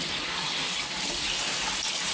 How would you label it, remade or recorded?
recorded